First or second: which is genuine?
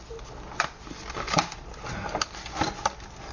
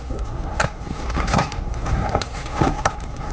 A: first